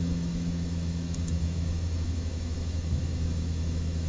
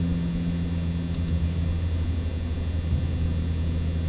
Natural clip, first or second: second